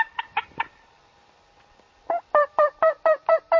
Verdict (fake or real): fake